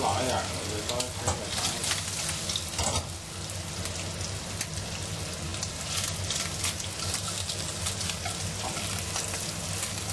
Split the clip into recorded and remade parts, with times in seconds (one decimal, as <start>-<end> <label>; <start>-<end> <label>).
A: 0.0-10.1 recorded